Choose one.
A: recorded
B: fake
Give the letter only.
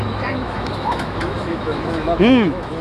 B